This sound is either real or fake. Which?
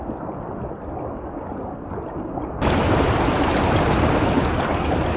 real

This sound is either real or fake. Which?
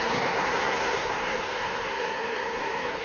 fake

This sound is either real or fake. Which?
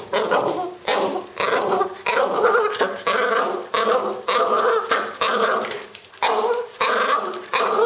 real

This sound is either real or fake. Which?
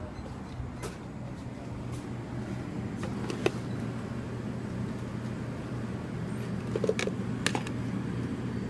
real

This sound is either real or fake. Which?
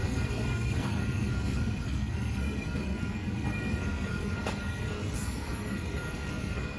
fake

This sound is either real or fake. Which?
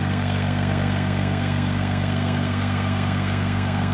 fake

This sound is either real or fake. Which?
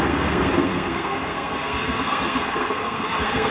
fake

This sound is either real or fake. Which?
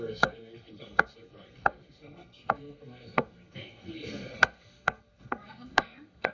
fake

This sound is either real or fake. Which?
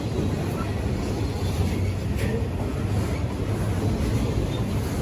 real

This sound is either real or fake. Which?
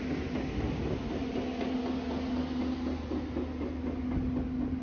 real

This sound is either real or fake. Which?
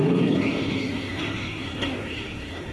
fake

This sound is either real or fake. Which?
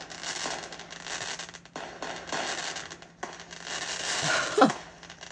real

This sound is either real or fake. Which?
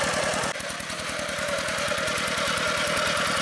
real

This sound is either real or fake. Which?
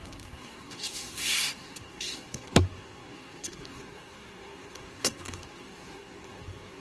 fake